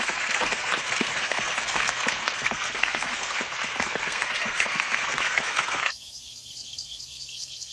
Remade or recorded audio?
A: remade